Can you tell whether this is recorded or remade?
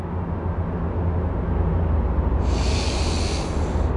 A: recorded